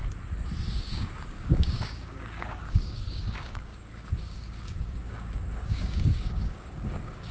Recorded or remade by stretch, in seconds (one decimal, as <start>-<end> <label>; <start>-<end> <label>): 0.0-0.7 recorded; 0.7-7.3 remade